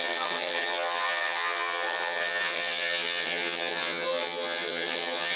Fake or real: fake